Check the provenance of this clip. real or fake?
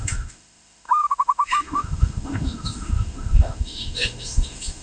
fake